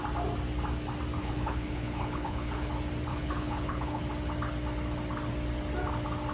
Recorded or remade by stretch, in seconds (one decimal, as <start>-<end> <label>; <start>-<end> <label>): 0.0-1.2 recorded; 1.2-2.7 remade; 2.7-3.1 recorded; 3.1-4.0 remade; 4.0-6.3 recorded